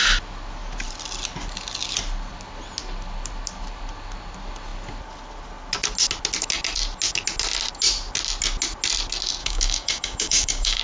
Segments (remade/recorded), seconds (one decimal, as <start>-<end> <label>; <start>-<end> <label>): 0.0-9.4 recorded; 9.4-10.8 remade